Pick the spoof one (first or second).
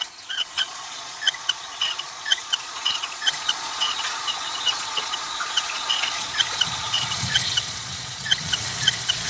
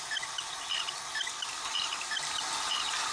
first